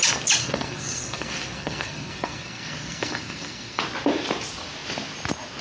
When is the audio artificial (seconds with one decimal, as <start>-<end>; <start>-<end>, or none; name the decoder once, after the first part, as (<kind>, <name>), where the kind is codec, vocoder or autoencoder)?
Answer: 0.4-3.8 (codec, SNAC)